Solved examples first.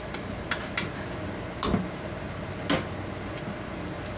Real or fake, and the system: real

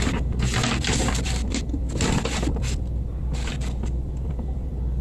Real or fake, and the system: fake, vocoder, BigVGAN v2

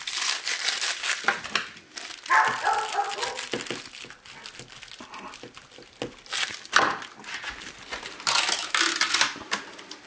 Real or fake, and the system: real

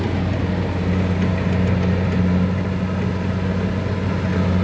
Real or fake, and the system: real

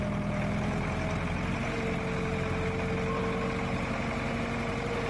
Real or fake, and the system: real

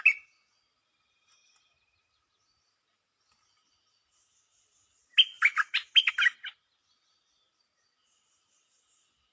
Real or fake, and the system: real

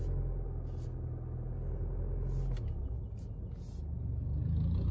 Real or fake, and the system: real